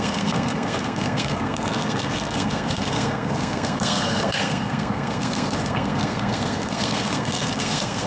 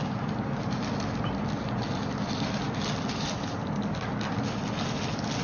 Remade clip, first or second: first